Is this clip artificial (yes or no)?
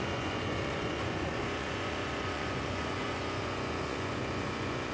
yes